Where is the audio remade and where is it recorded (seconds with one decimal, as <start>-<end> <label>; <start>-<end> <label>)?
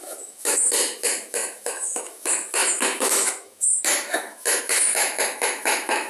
0.0-6.1 remade